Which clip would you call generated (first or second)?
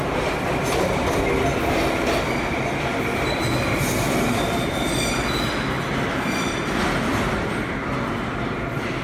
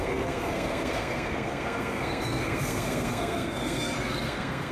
second